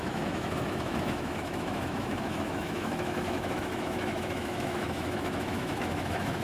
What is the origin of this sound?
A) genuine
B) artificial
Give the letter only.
B